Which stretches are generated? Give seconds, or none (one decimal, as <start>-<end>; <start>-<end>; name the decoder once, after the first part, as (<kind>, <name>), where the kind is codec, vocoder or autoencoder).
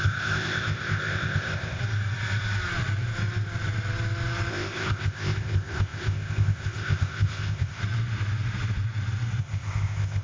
0.0-1.8 (codec, ZipCodec); 4.5-7.8; 9.4-10.2